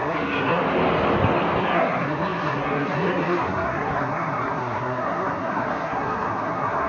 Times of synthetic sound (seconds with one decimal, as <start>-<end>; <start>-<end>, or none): 0.0-0.6; 1.6-6.9